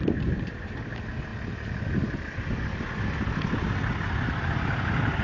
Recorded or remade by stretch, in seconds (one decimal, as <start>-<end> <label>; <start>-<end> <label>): 0.0-5.2 recorded